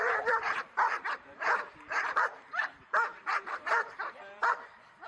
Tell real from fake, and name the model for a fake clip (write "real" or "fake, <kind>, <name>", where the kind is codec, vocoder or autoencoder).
fake, vocoder, BigVGAN v2